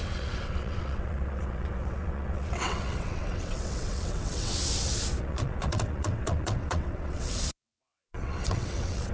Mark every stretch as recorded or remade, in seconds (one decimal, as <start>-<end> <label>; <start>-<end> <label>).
0.0-4.5 remade; 4.5-5.2 recorded; 5.2-9.1 remade